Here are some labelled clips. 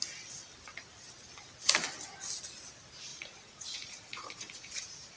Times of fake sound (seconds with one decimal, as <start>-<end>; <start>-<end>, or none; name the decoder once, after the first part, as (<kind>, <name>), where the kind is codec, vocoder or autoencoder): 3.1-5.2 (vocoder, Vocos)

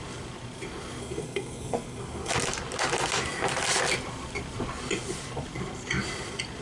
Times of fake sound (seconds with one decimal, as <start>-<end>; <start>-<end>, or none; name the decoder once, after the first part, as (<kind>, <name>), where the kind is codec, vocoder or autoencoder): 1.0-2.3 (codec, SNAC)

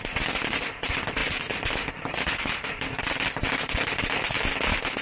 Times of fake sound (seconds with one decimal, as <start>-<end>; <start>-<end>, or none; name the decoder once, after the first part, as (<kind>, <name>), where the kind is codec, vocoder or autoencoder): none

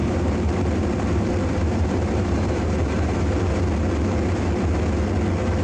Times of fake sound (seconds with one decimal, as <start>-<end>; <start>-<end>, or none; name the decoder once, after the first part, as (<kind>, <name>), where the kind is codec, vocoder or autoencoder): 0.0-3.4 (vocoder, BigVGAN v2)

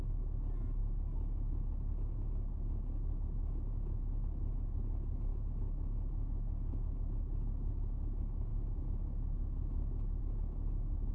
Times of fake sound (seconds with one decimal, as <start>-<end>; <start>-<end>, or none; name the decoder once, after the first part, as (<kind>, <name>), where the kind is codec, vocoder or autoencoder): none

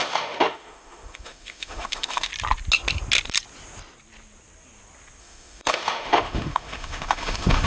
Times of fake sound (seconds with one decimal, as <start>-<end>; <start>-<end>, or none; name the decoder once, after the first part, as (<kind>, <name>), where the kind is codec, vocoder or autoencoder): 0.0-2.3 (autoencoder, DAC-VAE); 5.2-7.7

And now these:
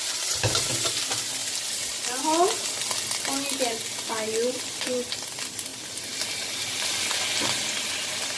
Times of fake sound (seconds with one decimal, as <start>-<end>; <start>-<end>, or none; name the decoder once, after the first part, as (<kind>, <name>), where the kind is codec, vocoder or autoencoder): none

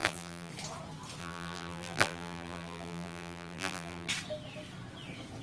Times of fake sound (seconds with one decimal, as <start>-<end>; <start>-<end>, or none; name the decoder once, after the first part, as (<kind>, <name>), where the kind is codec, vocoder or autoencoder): 0.0-0.5 (vocoder, BigVGAN v2); 1.2-4.1